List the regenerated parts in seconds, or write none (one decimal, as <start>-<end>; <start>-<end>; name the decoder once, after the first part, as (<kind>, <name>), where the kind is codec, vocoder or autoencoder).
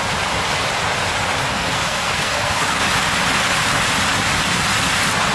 1.5-2.8 (codec, SNAC)